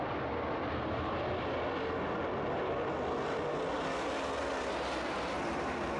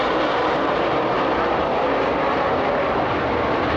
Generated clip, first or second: second